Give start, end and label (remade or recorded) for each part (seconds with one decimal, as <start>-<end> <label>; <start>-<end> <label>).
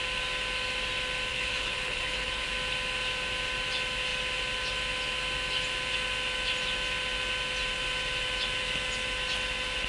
0.0-1.3 recorded; 1.3-2.5 remade; 2.5-9.9 recorded